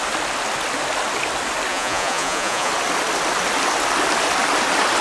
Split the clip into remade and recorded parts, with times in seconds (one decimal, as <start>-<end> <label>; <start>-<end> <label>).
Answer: 0.0-1.7 recorded; 1.7-2.7 remade; 2.7-5.0 recorded